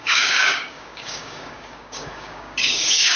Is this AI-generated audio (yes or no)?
yes